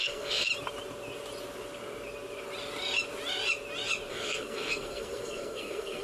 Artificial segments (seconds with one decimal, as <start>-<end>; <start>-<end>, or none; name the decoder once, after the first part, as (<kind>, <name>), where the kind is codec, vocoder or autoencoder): 0.0-0.5 (codec, SNAC); 4.1-6.0